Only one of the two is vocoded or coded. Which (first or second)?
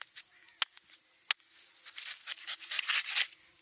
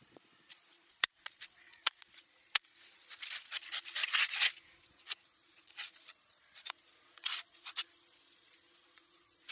second